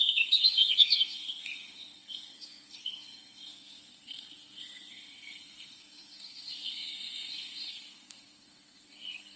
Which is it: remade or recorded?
remade